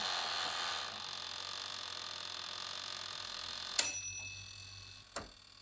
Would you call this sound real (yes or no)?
yes